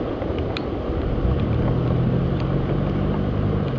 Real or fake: fake